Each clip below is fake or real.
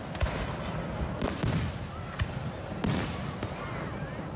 real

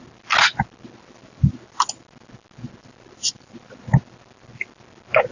real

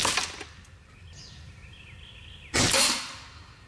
real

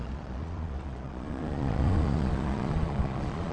fake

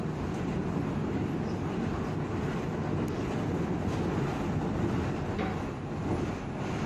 real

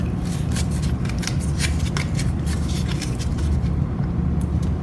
real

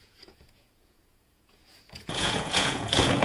fake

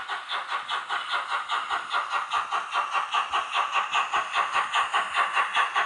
real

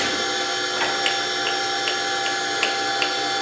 real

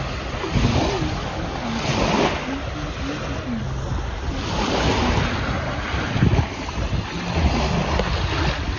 real